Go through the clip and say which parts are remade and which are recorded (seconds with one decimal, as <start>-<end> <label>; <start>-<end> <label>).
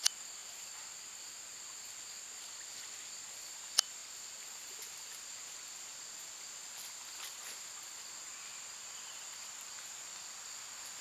0.0-11.0 recorded